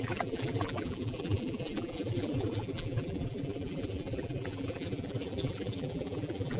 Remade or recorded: remade